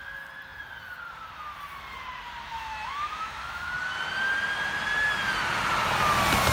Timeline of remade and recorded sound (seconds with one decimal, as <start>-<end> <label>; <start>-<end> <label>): 0.0-2.5 recorded; 2.5-3.7 remade; 3.7-6.5 recorded